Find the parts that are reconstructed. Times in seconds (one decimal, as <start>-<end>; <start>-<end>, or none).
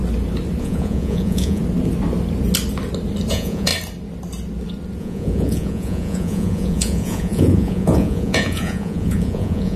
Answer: 0.6-1.6; 3.3-3.7; 5.0-9.8